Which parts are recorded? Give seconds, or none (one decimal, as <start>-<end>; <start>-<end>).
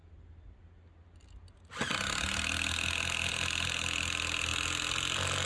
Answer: 0.0-5.5